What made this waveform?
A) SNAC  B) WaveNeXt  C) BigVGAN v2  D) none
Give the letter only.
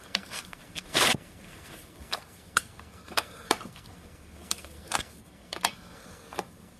A